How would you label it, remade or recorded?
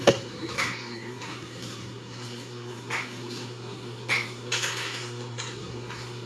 remade